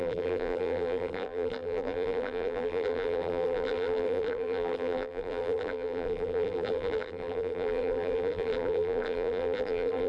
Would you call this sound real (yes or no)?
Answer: no